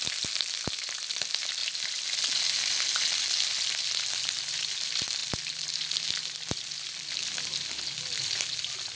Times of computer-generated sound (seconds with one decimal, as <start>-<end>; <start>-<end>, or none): none